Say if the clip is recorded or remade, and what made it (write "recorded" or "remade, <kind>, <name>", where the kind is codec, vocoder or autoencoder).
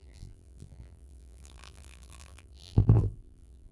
remade, vocoder, BigVGAN v2